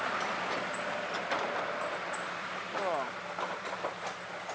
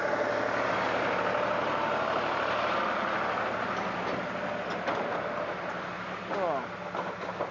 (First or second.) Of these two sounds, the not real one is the first